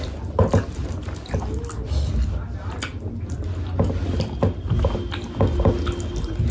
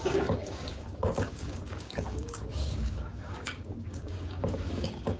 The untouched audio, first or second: first